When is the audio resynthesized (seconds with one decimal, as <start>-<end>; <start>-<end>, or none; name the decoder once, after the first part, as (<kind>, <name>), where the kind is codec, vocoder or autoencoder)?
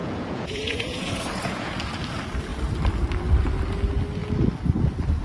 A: 0.0-1.8 (vocoder, Vocos)